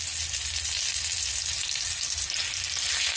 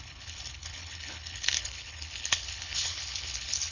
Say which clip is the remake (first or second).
second